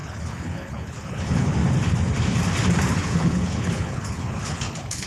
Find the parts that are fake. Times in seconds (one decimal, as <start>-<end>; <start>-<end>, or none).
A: 0.0-1.6; 2.9-5.1